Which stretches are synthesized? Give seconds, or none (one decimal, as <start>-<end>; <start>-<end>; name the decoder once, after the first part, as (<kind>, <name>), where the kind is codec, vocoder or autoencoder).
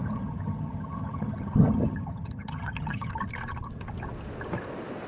0.0-3.1 (vocoder, HiFi-GAN)